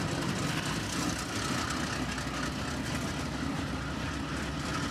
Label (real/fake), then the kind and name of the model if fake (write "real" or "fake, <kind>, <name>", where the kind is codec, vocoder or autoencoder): real